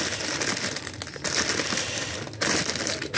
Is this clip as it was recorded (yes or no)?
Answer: yes